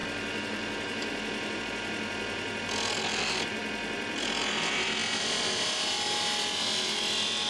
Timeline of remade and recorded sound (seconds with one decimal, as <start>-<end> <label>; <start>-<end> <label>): 0.0-1.6 remade; 1.6-7.5 recorded